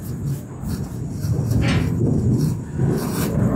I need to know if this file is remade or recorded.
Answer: recorded